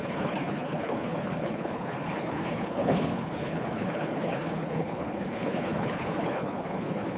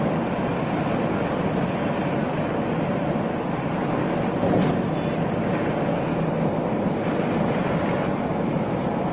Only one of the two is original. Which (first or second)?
second